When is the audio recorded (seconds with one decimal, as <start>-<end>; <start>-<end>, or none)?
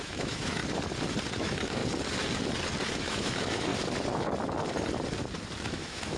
0.6-1.4; 1.8-2.9; 3.7-5.6